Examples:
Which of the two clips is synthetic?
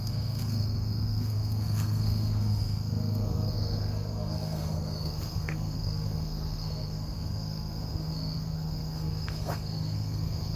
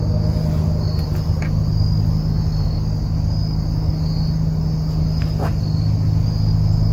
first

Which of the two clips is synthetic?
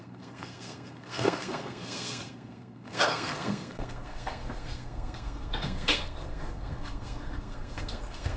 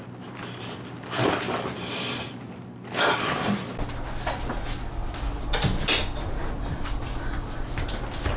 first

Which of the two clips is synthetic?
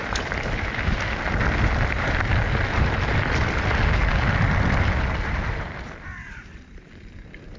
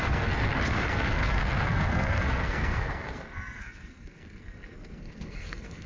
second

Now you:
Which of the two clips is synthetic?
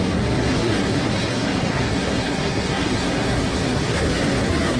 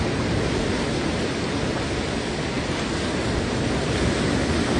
first